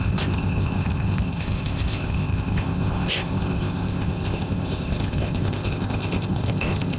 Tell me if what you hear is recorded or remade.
remade